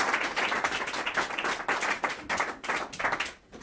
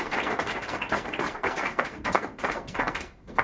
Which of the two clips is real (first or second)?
first